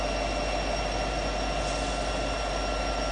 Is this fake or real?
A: real